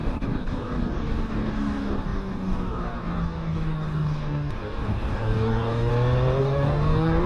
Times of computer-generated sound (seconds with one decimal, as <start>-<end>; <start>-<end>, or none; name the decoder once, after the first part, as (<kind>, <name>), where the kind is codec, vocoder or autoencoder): 0.0-5.9 (codec, DAC); 6.4-7.3